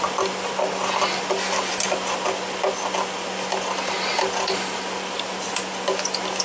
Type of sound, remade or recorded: recorded